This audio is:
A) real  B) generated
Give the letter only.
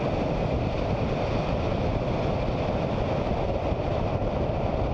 A